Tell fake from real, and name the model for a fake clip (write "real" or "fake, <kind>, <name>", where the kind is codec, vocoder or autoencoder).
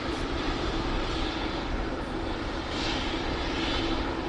real